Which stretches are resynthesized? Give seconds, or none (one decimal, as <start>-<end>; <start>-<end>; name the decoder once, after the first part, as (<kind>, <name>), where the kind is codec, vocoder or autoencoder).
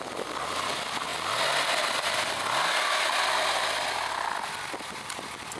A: none